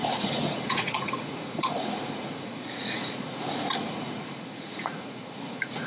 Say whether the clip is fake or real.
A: fake